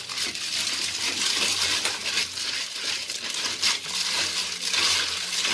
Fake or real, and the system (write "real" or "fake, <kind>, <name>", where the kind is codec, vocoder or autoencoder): real